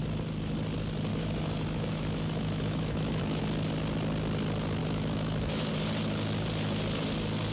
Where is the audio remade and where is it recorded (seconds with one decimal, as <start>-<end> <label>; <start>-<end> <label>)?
0.0-1.1 recorded; 1.1-3.4 remade; 3.4-4.8 recorded; 4.8-5.7 remade; 5.7-7.5 recorded